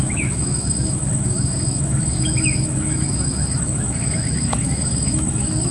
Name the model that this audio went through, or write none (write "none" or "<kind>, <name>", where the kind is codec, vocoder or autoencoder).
autoencoder, DAC-VAE